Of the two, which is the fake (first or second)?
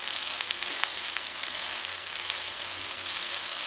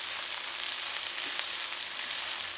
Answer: first